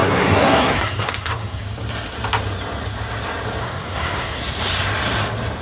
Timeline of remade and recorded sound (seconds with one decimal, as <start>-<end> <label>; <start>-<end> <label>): 0.0-1.6 remade; 1.6-3.6 recorded; 3.6-4.4 remade; 4.4-5.6 recorded